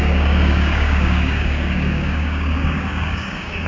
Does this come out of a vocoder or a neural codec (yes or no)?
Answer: yes